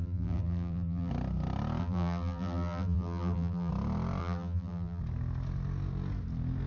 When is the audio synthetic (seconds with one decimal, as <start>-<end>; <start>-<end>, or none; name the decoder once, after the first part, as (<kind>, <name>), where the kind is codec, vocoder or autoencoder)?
0.0-1.1 (vocoder, BigVGAN v2); 1.8-3.7; 4.2-5.0